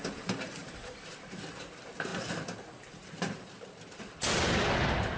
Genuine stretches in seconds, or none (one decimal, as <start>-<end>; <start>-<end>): 0.0-0.6; 1.4-5.2